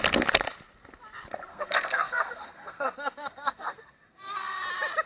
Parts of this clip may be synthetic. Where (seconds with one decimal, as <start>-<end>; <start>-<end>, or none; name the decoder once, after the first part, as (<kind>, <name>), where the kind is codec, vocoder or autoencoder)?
1.5-4.6 (codec, SNAC)